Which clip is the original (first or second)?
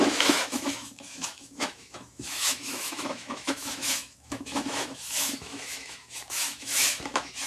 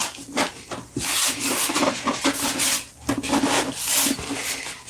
second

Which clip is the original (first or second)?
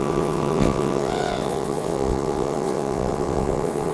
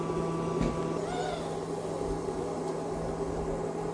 second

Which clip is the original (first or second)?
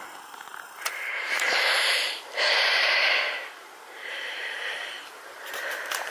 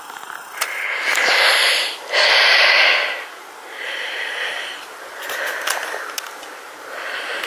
second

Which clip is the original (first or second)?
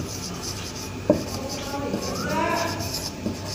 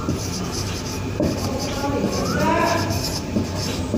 first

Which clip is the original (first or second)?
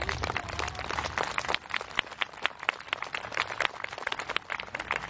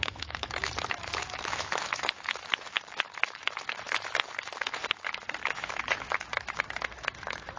first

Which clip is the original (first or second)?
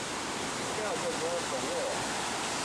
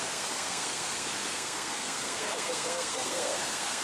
first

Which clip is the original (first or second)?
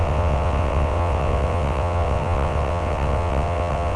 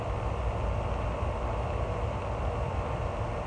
second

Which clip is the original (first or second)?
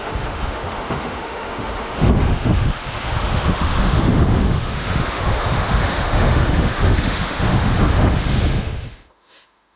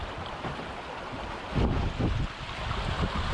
second